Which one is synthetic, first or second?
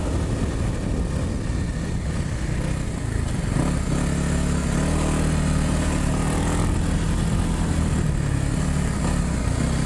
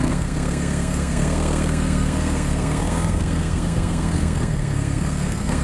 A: second